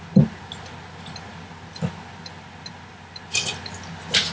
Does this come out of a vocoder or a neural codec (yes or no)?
no